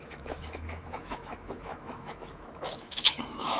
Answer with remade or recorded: remade